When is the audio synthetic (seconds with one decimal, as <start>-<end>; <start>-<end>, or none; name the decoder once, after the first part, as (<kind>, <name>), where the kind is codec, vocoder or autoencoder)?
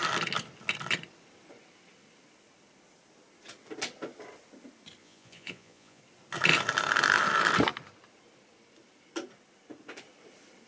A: 5.0-6.0 (vocoder, Vocos)